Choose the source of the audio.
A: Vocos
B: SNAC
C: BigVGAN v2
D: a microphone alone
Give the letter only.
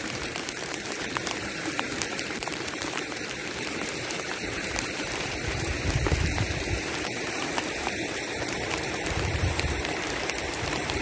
C